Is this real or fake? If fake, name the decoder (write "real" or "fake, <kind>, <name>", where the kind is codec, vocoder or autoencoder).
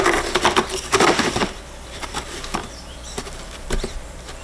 fake, vocoder, BigVGAN v2